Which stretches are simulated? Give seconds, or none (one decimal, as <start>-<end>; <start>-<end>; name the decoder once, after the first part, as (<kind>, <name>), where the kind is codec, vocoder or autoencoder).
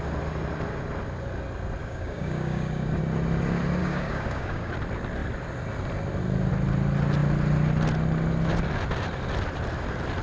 1.8-3.0 (codec, DAC); 3.8-4.7